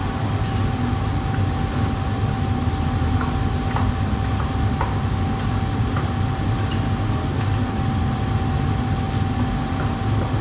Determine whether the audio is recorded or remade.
recorded